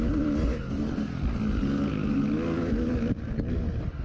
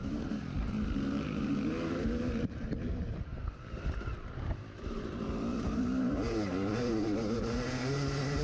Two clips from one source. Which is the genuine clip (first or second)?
first